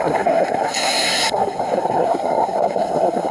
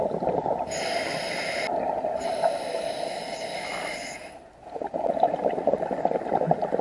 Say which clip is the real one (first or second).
second